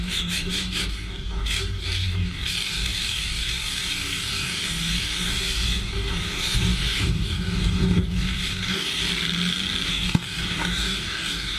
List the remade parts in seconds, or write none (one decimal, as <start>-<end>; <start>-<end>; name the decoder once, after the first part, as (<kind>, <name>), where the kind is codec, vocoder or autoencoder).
0.0-9.0 (codec, DAC); 9.9-11.6